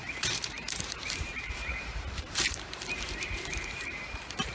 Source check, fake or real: fake